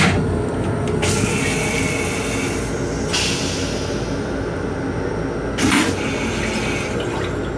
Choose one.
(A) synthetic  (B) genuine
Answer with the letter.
B